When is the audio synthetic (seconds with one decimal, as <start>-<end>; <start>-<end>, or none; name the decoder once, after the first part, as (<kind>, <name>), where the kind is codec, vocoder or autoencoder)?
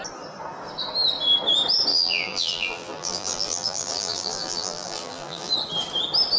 1.9-5.5 (vocoder, BigVGAN v2)